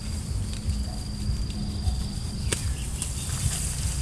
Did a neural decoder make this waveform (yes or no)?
no